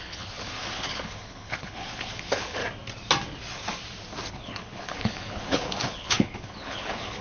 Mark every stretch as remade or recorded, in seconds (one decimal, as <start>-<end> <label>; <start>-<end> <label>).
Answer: 0.0-2.6 remade; 2.6-4.3 recorded; 4.3-7.2 remade